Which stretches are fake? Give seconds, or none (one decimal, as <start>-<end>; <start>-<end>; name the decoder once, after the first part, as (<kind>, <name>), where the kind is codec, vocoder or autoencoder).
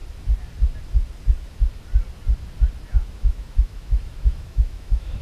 3.1-5.2 (autoencoder, DAC-VAE)